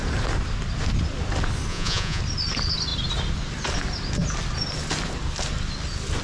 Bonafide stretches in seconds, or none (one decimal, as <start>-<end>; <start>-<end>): 0.0-1.7; 2.2-6.2